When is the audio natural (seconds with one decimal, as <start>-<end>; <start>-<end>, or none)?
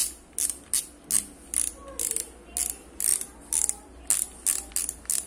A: 0.0-5.3